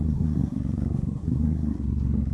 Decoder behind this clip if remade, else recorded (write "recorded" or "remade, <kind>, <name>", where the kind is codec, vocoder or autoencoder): remade, codec, SNAC